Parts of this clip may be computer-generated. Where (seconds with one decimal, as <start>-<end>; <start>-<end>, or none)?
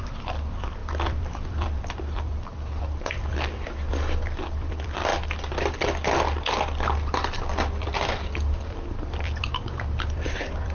0.0-5.1; 7.9-10.7